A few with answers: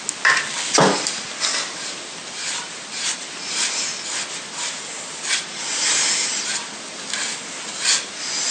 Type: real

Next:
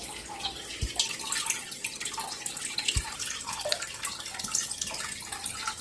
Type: real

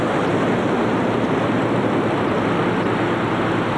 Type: real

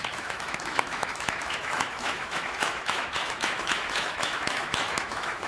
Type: fake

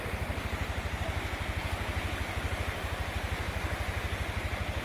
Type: real